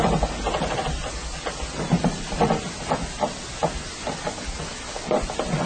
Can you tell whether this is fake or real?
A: real